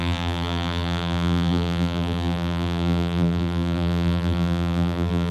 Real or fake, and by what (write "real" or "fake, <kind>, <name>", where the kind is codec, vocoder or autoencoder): fake, vocoder, BigVGAN v2